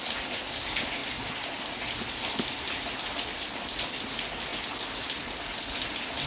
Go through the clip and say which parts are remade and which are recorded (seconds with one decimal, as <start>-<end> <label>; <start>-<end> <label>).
0.0-6.3 recorded